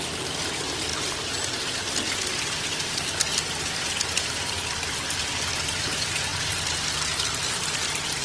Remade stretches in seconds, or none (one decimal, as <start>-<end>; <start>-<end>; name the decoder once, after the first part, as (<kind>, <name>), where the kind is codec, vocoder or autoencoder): none